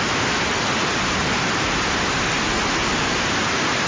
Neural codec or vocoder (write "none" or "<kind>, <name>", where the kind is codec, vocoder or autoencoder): none